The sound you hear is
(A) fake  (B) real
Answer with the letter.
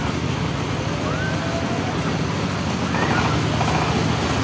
B